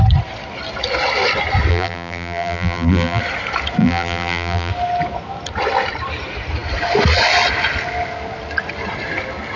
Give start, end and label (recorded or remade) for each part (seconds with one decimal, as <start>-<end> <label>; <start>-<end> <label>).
0.0-1.7 recorded; 1.7-3.2 remade; 3.2-3.8 recorded; 3.8-4.7 remade; 4.7-9.6 recorded